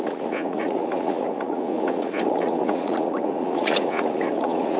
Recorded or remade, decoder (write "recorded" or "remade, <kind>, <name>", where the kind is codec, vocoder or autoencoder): remade, vocoder, Vocos